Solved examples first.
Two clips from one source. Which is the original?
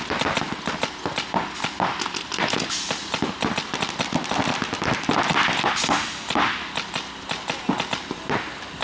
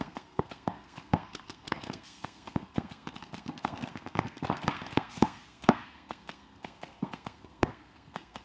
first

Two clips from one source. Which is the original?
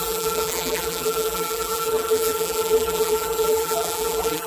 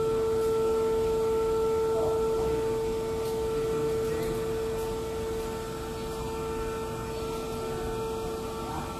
second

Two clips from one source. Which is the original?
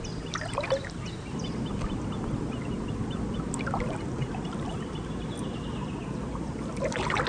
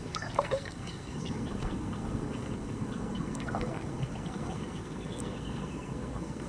first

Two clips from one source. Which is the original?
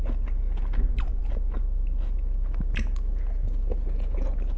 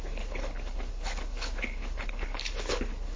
first